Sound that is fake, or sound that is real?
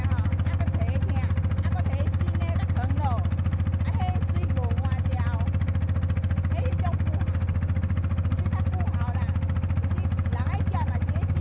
real